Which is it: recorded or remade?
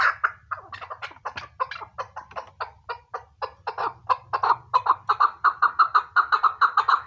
recorded